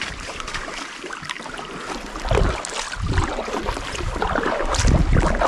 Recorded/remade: recorded